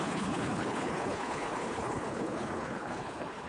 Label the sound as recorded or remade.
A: remade